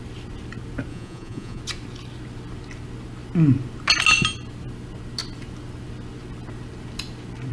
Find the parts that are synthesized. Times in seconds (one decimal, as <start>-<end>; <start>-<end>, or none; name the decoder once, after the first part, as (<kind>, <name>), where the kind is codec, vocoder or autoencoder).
0.9-1.6 (vocoder, Vocos)